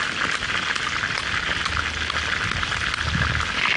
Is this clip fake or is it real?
real